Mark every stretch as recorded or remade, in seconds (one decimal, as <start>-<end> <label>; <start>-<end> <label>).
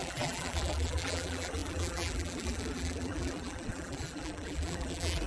0.0-5.3 remade